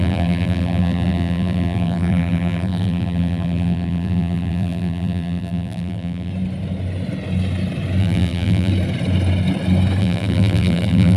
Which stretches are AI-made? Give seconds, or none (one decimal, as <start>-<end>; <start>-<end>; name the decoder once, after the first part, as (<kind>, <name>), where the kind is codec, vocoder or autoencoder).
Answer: 0.0-6.3 (vocoder, BigVGAN v2); 8.0-8.7; 10.0-11.2